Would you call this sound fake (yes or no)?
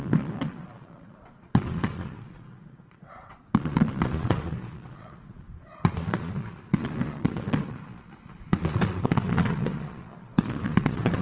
yes